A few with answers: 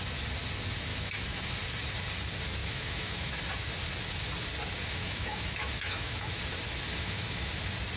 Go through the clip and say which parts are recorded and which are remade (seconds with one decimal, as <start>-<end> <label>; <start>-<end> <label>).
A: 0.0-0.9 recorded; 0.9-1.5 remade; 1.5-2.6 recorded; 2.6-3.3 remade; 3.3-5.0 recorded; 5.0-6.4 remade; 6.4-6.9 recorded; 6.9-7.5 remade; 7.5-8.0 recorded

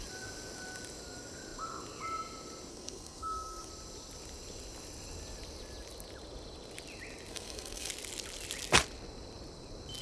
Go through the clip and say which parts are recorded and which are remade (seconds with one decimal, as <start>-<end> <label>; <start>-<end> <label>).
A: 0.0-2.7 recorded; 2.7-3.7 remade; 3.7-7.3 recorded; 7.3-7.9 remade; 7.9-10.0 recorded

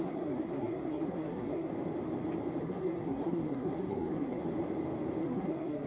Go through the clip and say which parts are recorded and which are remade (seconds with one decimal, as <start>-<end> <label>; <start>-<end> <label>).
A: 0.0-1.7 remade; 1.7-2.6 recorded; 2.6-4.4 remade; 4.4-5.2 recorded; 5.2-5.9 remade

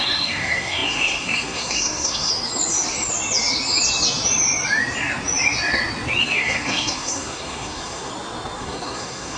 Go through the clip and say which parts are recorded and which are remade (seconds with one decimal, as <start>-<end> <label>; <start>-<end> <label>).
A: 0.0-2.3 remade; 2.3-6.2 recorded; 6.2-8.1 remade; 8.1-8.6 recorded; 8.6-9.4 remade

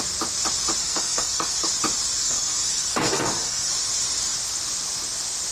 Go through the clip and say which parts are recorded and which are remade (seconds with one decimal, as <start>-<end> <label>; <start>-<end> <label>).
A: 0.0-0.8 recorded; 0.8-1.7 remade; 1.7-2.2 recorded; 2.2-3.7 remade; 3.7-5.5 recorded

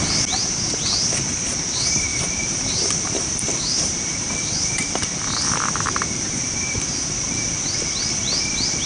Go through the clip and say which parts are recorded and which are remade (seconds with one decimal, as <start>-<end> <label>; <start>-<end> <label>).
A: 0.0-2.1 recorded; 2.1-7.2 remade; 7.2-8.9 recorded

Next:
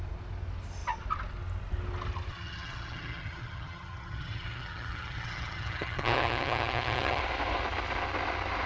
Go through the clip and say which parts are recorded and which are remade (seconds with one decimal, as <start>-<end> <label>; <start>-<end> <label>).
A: 0.0-2.3 recorded; 2.3-7.2 remade; 7.2-8.7 recorded

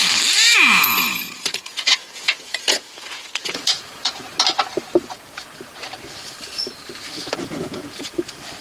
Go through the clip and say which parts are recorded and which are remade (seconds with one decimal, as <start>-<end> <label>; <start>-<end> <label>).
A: 0.0-0.5 recorded; 0.5-4.4 remade; 4.4-7.2 recorded; 7.2-8.1 remade; 8.1-8.6 recorded